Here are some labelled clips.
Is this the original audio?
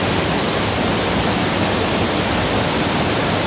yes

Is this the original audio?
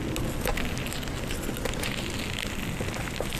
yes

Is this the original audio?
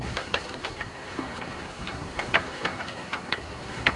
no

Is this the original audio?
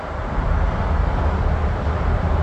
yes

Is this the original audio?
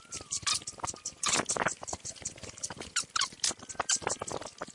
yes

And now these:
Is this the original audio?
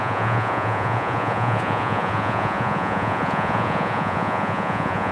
no